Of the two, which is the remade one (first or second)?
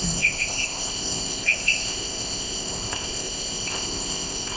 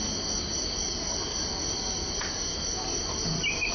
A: first